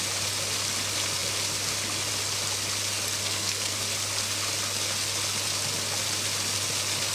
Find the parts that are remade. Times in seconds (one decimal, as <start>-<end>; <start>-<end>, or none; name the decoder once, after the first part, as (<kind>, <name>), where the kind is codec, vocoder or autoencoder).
3.2-3.8 (codec, SNAC)